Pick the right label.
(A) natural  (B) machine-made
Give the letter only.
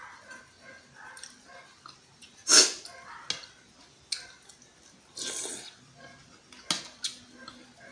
A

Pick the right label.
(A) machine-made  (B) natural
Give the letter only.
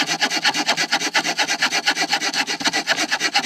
B